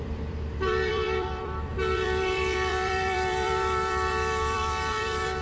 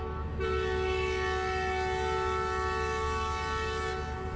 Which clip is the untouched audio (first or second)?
second